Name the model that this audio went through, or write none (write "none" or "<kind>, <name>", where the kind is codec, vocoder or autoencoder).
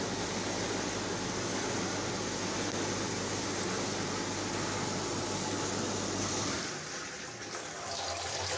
none